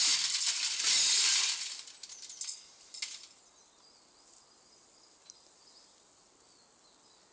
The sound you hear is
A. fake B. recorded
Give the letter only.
B